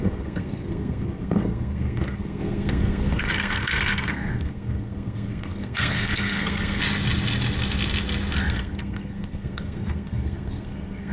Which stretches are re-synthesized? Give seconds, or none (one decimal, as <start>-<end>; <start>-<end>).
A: 0.0-6.8; 8.5-11.1